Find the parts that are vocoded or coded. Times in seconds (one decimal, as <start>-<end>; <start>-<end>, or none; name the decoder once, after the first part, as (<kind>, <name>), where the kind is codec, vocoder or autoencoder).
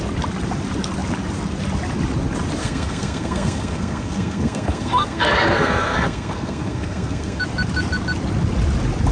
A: 2.6-7.4 (codec, SNAC)